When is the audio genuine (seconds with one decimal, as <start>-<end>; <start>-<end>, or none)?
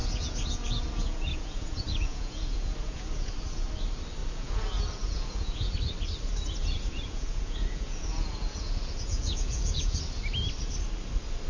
3.7-4.2; 5.7-6.6; 10.0-11.5